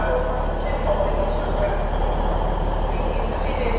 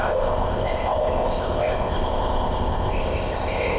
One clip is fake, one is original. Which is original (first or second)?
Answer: first